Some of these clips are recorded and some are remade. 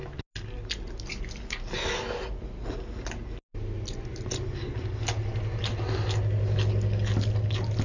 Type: recorded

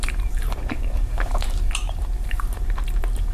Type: remade